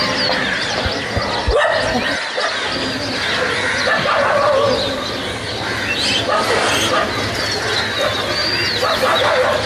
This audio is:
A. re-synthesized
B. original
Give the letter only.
B